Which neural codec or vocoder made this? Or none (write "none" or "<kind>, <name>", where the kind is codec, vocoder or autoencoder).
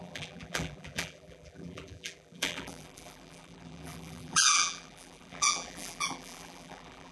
vocoder, BigVGAN v2